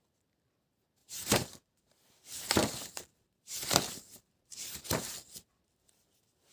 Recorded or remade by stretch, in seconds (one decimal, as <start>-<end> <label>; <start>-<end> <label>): 0.0-1.0 recorded; 1.0-2.2 remade; 2.2-2.6 recorded; 2.6-6.0 remade; 6.0-6.5 recorded